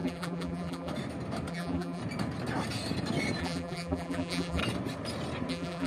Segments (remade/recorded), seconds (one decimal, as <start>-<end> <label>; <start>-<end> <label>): 0.0-0.9 remade; 0.9-1.5 recorded; 1.5-2.0 remade; 2.0-3.4 recorded; 3.4-4.6 remade; 4.6-5.5 recorded; 5.5-5.9 remade